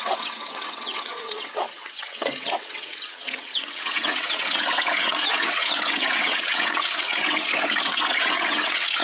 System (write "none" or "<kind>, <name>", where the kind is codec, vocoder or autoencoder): vocoder, WaveNeXt